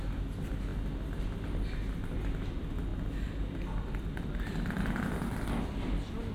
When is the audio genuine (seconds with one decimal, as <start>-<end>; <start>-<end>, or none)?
0.0-6.3